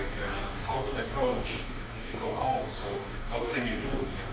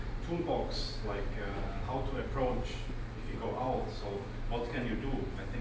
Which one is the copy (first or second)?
first